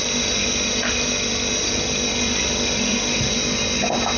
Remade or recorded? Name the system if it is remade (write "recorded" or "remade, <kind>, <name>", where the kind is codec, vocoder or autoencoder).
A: recorded